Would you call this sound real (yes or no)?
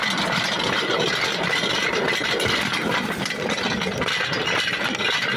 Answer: yes